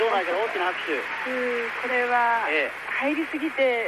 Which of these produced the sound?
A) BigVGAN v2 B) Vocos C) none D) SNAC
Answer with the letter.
C